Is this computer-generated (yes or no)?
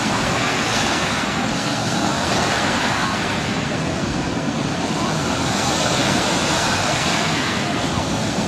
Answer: yes